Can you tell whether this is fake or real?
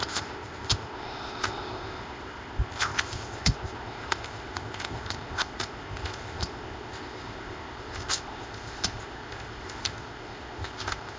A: fake